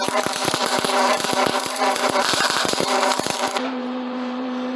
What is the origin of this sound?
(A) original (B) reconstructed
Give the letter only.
B